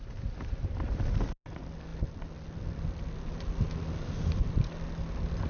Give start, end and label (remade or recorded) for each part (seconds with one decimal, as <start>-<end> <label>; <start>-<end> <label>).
0.0-5.5 recorded